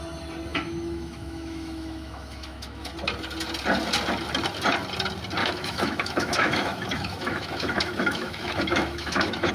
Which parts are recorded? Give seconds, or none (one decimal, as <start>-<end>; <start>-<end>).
0.0-0.5; 2.9-5.4